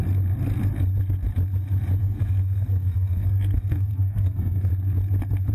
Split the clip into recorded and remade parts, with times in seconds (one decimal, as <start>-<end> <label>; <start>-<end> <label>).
0.0-2.0 recorded; 2.0-4.7 remade; 4.7-5.5 recorded